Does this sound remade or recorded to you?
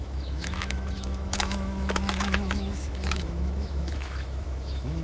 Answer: remade